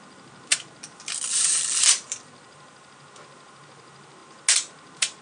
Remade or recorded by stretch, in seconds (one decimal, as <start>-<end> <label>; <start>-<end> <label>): 0.0-5.2 recorded